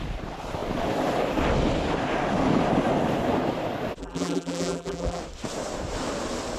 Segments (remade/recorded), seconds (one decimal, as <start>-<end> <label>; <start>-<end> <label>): 0.0-4.0 recorded; 4.0-5.2 remade; 5.2-6.6 recorded